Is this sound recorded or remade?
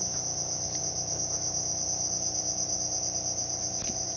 recorded